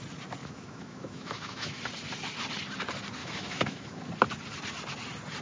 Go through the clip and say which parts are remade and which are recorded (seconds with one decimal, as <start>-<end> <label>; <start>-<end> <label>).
0.0-0.4 recorded; 0.4-1.8 remade; 1.8-3.2 recorded; 3.2-4.1 remade; 4.1-5.4 recorded